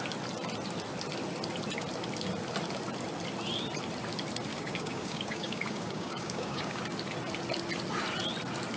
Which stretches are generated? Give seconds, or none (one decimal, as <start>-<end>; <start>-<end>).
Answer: 4.5-6.8